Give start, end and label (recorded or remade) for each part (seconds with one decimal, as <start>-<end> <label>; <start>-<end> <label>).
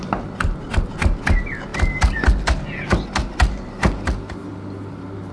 0.0-5.3 recorded